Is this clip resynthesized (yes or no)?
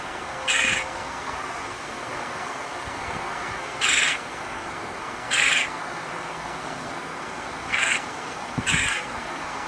yes